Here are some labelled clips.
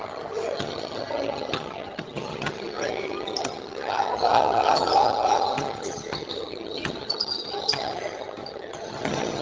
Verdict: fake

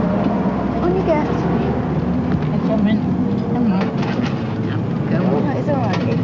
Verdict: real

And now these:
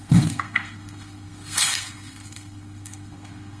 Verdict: fake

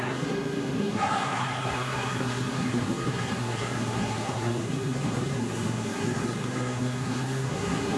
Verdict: fake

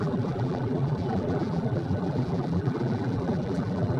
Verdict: fake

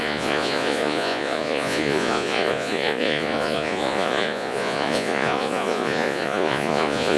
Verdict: fake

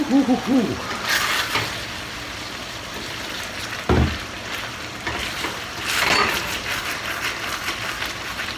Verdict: fake